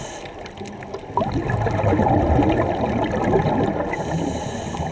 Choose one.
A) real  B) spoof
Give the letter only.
A